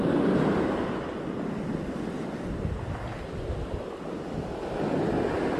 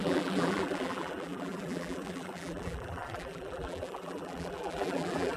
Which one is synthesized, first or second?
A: second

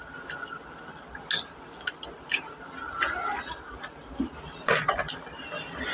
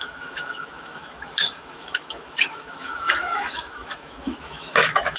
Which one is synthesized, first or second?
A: second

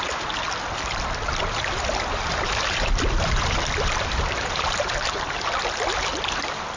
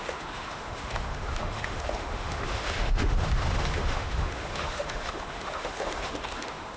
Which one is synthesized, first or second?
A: second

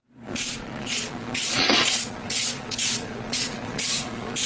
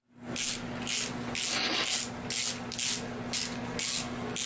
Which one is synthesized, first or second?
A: first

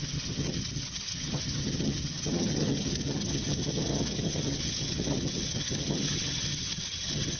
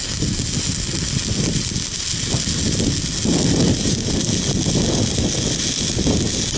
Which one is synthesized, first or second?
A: first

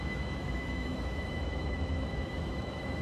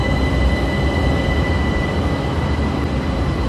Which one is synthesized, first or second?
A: first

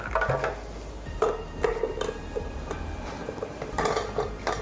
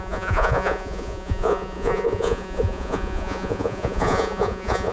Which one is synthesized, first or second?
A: second